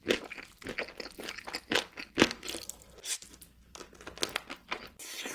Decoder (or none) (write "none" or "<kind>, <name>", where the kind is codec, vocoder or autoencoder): none